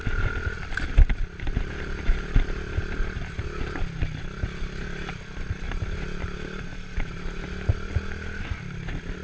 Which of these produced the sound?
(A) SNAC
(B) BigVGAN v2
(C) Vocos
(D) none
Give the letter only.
D